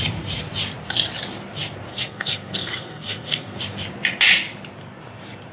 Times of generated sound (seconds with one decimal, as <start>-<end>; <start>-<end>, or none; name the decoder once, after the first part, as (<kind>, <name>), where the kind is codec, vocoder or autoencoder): 1.9-3.6 (codec, SNAC)